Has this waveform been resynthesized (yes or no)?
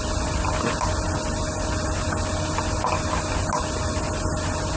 no